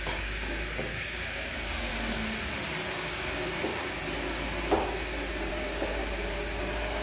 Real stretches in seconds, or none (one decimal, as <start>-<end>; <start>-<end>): 1.9-2.9; 3.7-5.5; 6.0-6.6